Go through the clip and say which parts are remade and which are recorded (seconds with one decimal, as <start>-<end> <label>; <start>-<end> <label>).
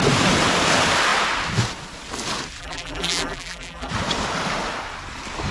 0.0-2.6 recorded; 2.6-3.9 remade; 3.9-5.5 recorded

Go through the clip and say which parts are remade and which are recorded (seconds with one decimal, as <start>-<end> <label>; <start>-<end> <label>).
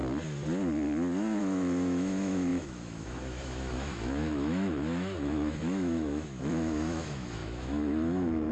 0.0-1.4 recorded; 1.4-8.5 remade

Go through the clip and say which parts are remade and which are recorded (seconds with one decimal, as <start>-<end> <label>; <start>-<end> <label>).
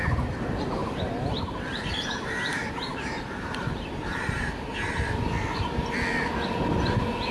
0.0-0.8 recorded; 0.8-5.2 remade; 5.2-7.3 recorded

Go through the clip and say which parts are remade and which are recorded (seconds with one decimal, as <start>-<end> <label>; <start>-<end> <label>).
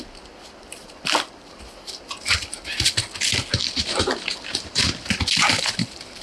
0.0-6.2 recorded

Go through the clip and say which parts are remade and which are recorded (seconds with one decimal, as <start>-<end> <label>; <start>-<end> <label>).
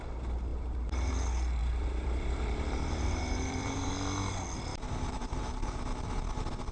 0.0-0.5 recorded; 0.5-1.1 remade; 1.1-1.6 recorded; 1.6-3.9 remade; 3.9-4.7 recorded; 4.7-5.8 remade; 5.8-6.7 recorded